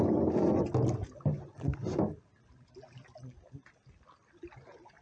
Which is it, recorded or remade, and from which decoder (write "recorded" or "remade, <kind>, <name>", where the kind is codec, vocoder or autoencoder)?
recorded